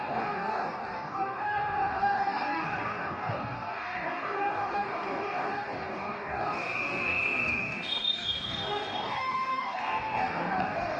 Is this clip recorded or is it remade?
remade